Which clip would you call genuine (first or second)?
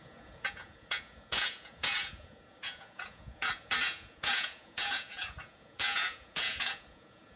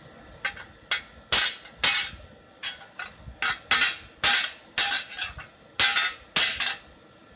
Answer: second